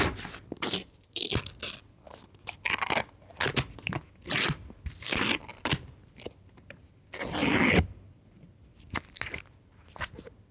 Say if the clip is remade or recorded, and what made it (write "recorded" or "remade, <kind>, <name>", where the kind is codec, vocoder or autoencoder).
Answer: recorded